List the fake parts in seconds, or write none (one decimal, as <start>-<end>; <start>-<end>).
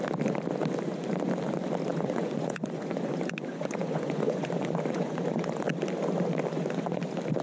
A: 1.9-5.7; 6.5-7.0